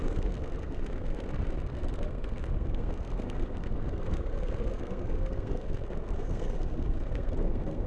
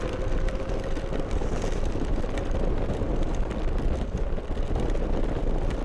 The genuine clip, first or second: second